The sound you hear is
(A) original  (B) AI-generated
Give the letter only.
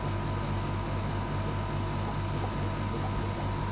A